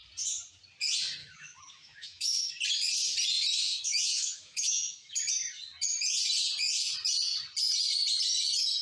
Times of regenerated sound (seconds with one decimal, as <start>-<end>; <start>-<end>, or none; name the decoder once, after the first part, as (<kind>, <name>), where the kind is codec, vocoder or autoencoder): 1.2-2.5 (autoencoder, DAC-VAE); 3.7-5.2